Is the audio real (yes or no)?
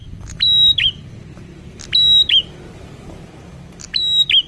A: yes